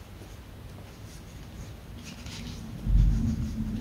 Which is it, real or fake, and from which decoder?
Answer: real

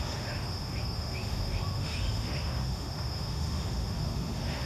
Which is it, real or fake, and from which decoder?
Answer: fake, autoencoder, DAC-VAE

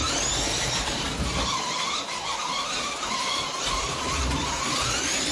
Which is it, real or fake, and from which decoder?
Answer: fake, vocoder, BigVGAN v2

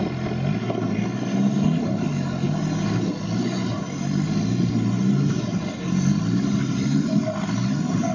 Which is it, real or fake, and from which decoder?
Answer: real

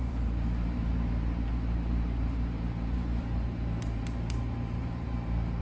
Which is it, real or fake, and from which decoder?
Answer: fake, vocoder, BigVGAN v2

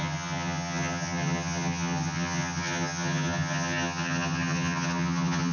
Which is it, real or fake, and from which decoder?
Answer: fake, vocoder, HiFi-GAN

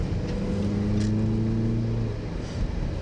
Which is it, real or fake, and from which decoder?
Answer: real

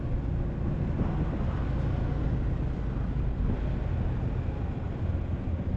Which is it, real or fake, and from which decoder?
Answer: real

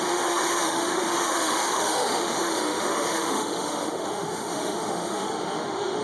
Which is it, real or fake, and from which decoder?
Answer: fake, autoencoder, DAC-VAE